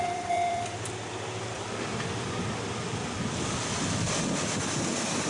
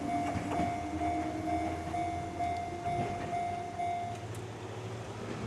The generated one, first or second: first